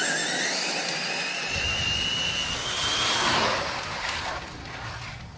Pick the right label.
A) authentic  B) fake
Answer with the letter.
A